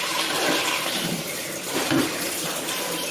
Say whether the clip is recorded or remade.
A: remade